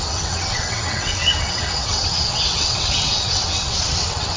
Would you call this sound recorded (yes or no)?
no